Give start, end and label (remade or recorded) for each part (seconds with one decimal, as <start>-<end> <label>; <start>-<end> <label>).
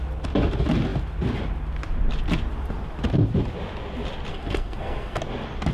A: 0.0-4.3 recorded; 4.3-5.2 remade; 5.2-5.7 recorded